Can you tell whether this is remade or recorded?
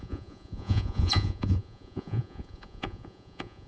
remade